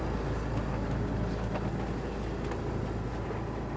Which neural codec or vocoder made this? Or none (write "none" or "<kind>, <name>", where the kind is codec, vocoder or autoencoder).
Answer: none